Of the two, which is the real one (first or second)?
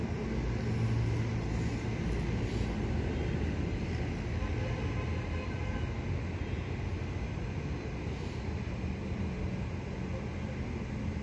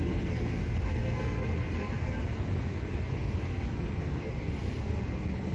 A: first